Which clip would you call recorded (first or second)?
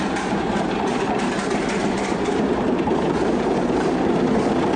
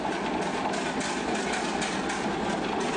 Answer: second